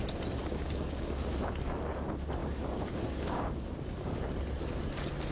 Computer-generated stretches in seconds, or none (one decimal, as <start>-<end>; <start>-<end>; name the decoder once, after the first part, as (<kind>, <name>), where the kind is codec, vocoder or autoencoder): 0.4-1.5 (codec, DAC); 2.4-4.2